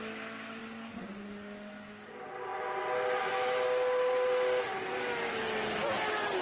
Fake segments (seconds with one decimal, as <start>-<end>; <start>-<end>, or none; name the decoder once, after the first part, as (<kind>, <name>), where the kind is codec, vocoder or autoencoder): 0.6-2.1 (codec, DAC)